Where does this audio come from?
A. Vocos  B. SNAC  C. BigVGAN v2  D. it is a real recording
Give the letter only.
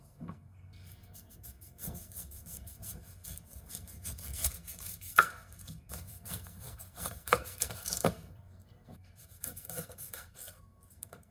B